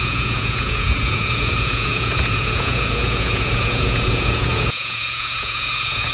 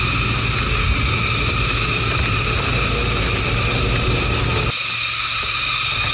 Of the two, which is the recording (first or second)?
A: second